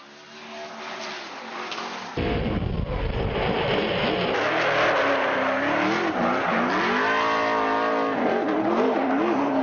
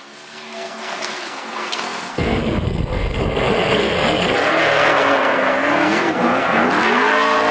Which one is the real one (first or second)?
first